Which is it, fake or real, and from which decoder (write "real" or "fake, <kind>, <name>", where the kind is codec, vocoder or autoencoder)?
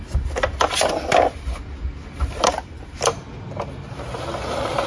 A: real